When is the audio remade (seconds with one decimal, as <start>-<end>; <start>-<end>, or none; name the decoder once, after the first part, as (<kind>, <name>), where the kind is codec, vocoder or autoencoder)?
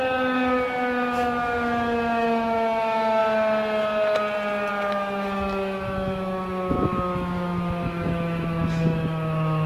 0.0-3.2 (autoencoder, DAC-VAE); 4.7-9.7